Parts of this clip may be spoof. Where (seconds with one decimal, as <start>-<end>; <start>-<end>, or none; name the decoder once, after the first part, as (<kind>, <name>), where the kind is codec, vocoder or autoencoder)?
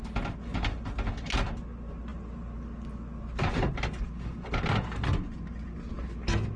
none